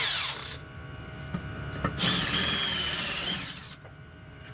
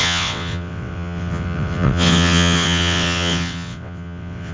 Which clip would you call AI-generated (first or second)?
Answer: second